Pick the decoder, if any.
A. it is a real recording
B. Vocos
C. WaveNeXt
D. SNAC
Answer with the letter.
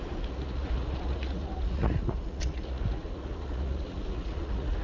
B